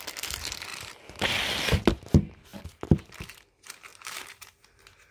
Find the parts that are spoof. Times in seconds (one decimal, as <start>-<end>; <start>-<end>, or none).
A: 0.7-1.2; 3.9-4.6